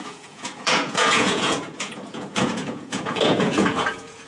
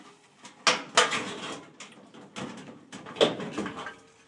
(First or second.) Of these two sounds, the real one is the second